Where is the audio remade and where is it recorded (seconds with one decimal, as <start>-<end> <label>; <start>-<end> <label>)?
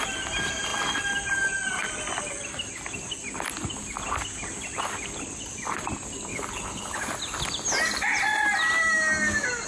0.0-6.3 recorded; 6.3-7.0 remade; 7.0-9.7 recorded